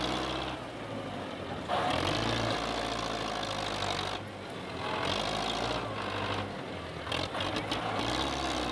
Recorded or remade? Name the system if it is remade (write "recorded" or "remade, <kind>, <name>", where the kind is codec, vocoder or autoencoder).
recorded